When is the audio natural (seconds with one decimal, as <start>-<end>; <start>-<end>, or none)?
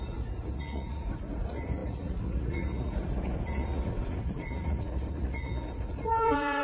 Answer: none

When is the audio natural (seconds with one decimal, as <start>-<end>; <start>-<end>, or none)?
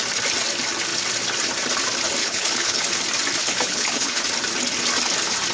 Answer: 0.0-2.2; 2.8-3.4; 4.2-5.5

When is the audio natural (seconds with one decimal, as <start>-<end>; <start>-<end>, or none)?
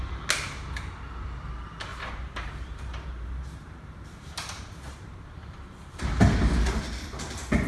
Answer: 0.0-1.9; 6.0-7.7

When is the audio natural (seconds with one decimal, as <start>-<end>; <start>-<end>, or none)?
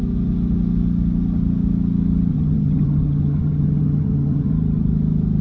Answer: 0.0-2.3; 4.5-5.4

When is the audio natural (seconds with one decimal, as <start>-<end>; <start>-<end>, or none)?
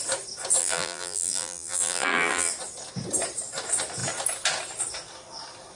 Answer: 0.0-0.6; 2.5-5.8